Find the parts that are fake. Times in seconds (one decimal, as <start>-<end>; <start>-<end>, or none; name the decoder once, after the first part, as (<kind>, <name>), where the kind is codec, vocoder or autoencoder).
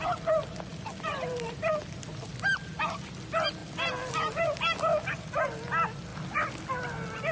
0.7-1.7 (vocoder, BigVGAN v2); 3.6-4.1